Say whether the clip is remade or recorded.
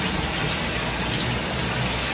recorded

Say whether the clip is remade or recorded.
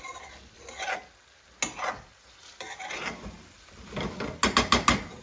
recorded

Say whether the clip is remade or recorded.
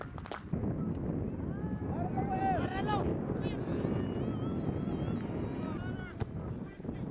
recorded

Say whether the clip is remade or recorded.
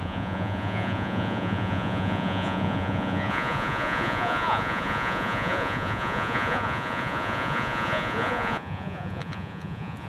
remade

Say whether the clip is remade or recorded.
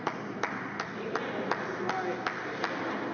recorded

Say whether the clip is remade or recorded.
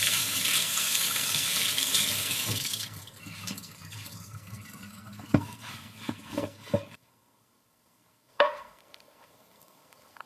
remade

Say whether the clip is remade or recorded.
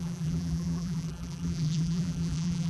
remade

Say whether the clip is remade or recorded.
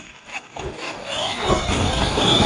remade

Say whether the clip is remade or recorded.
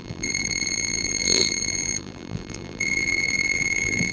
remade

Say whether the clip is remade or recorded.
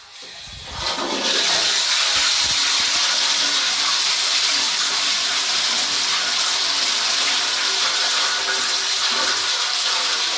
recorded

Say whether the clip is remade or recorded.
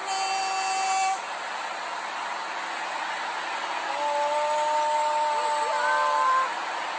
recorded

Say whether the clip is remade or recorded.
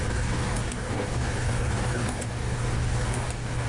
remade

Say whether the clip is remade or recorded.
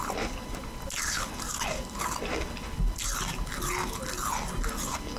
recorded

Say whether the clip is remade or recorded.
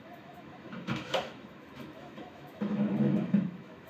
remade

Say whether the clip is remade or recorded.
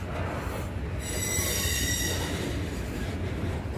recorded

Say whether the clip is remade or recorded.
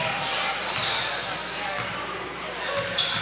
recorded